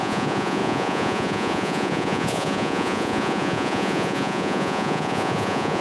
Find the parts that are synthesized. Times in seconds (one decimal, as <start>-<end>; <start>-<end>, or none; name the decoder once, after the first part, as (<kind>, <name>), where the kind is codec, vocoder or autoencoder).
0.0-5.8 (vocoder, Vocos)